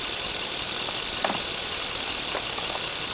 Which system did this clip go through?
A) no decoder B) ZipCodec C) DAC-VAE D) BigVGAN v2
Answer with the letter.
A